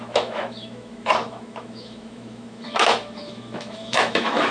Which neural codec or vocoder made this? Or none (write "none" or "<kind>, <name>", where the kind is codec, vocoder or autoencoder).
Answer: autoencoder, DAC-VAE